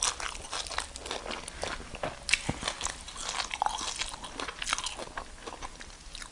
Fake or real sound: real